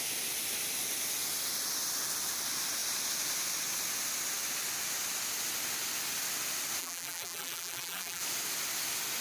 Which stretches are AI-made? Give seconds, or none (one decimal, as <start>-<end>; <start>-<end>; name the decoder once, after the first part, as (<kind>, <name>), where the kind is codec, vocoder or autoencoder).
6.8-8.2 (vocoder, BigVGAN v2)